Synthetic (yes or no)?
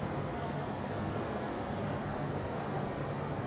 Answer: yes